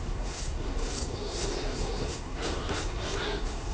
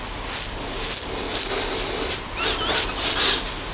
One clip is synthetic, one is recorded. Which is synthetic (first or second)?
first